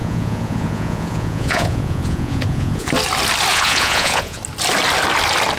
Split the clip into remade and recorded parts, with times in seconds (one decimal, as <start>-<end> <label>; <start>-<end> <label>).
0.0-2.9 remade; 2.9-3.5 recorded; 3.5-4.4 remade; 4.4-5.6 recorded